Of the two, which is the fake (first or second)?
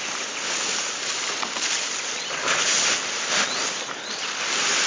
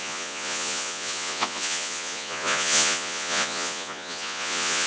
second